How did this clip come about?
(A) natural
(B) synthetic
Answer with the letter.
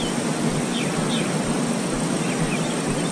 A